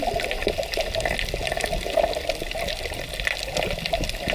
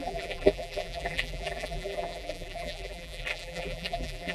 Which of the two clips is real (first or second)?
first